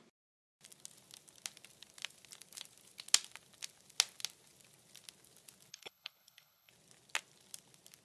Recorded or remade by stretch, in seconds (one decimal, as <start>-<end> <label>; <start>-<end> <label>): 0.0-5.7 recorded; 5.7-6.7 remade; 6.7-8.0 recorded